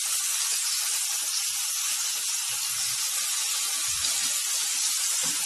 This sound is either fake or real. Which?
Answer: real